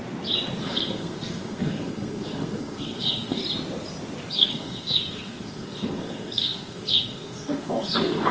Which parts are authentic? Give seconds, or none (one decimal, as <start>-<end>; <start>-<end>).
0.0-0.6; 3.4-4.3